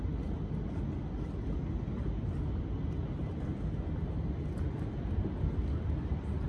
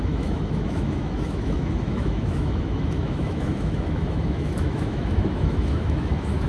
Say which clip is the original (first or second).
first